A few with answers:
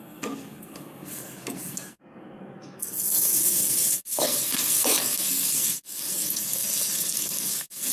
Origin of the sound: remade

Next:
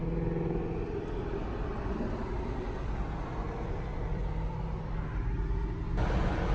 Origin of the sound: recorded